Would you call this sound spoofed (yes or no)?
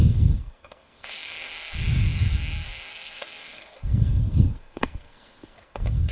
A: yes